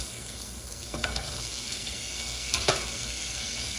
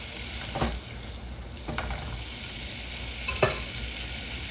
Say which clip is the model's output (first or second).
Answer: first